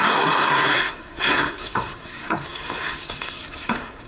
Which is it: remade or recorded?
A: remade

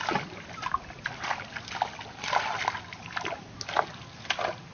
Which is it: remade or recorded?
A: recorded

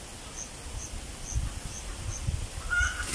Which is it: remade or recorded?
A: recorded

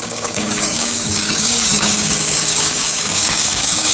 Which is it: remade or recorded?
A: remade